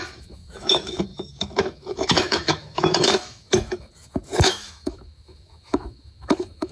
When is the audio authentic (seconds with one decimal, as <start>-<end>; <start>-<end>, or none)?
none